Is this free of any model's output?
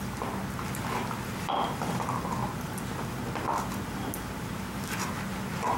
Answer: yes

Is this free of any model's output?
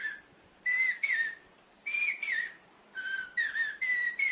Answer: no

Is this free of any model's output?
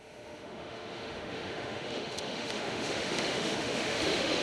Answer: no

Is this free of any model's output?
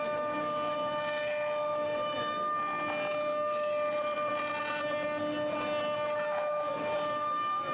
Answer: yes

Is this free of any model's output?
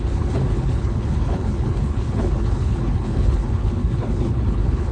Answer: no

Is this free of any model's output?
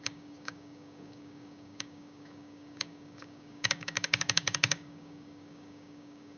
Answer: no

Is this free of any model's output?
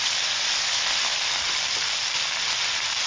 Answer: yes